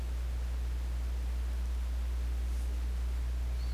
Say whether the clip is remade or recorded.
recorded